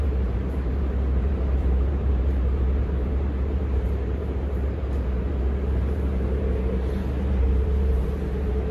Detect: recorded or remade remade